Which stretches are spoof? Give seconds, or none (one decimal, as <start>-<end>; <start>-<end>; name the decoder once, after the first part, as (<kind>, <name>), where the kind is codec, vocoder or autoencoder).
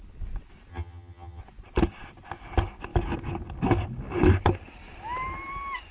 0.7-1.4 (vocoder, HiFi-GAN)